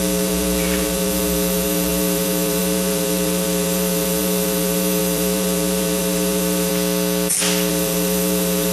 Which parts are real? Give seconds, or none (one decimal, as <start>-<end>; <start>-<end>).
6.7-7.7